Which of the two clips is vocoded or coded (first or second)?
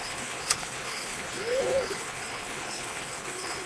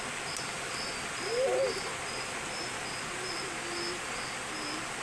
first